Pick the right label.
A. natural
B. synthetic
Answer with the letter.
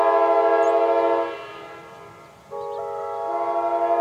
A